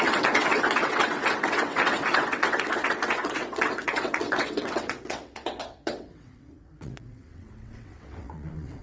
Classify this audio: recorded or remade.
remade